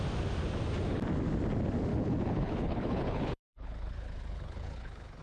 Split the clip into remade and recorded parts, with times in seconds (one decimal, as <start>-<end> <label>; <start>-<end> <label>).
0.0-1.9 recorded; 1.9-5.2 remade